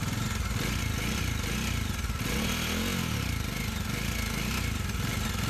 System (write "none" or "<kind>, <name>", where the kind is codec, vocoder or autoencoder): none